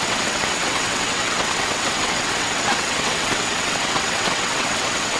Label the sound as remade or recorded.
remade